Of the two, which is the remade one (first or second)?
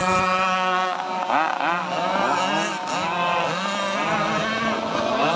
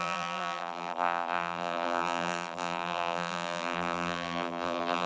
second